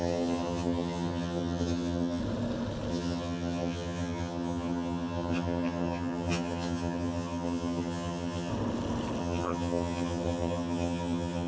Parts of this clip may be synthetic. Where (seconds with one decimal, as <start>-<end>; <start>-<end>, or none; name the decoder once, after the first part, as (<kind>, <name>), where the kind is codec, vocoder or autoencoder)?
0.0-2.2 (vocoder, HiFi-GAN); 2.9-8.5; 9.2-11.5